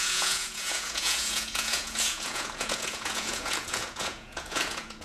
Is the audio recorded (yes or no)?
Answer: no